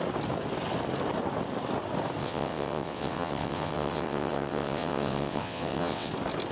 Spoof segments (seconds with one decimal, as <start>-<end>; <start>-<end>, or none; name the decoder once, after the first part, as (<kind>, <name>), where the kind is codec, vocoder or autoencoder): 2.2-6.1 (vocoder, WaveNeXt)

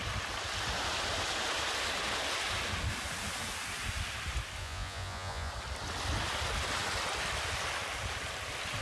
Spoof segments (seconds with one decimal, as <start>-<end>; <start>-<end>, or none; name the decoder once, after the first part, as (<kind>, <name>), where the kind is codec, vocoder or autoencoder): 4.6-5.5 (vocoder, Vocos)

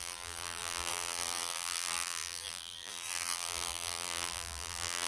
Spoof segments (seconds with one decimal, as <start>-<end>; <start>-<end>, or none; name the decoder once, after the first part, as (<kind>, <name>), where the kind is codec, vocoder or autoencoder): 0.0-5.1 (vocoder, BigVGAN v2)

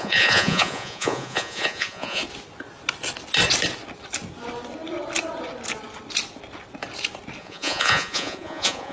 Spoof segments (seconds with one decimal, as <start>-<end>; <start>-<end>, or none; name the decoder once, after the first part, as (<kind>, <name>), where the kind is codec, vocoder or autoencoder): 0.0-2.2 (vocoder, Vocos); 7.4-8.9

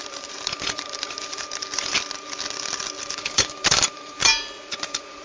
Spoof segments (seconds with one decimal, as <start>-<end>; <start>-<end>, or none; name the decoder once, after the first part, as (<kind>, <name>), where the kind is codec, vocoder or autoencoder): 0.0-1.9 (vocoder, BigVGAN v2); 3.1-5.2

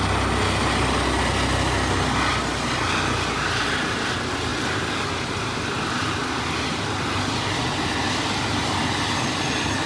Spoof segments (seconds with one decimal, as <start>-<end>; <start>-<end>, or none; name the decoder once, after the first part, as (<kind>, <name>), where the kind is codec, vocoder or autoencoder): none